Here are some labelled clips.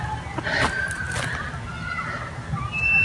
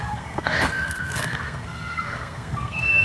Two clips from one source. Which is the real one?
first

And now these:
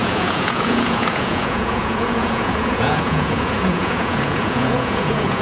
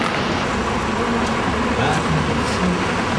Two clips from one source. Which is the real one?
second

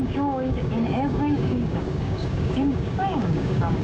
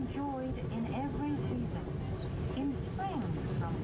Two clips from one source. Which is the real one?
second